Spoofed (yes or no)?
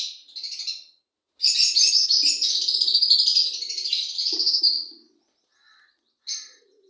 no